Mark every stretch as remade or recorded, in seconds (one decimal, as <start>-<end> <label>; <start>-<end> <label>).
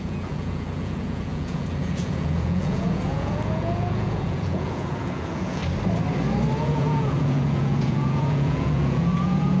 0.0-5.6 remade; 5.6-6.6 recorded; 6.6-9.6 remade